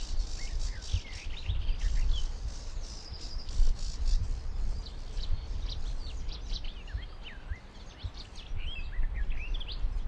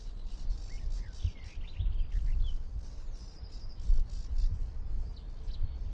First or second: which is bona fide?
second